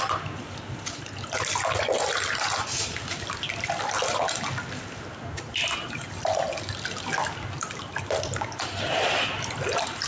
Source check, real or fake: real